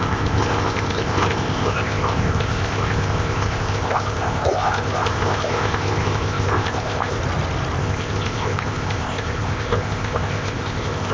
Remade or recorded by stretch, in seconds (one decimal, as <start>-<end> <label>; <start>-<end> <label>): 0.0-7.2 remade; 7.2-7.8 recorded; 7.8-11.1 remade